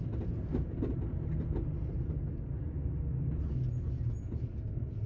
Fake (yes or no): no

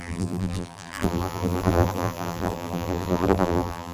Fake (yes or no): yes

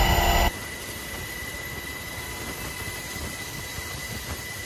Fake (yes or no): no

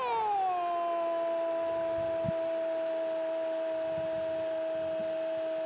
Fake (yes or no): no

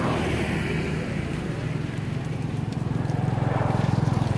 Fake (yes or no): yes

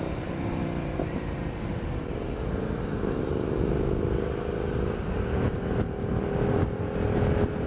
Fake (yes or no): no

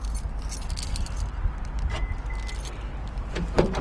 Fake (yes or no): no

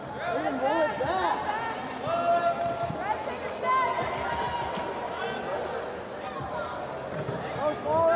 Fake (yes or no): no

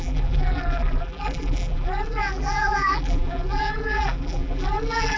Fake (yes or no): yes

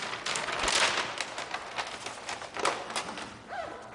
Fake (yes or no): no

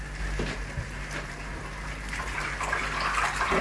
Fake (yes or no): yes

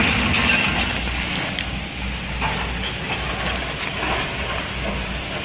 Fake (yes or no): no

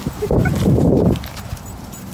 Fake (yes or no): yes